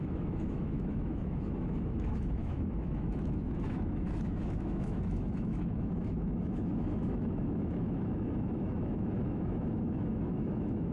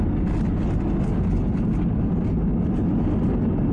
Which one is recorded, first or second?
second